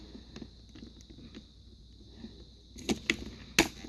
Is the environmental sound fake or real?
real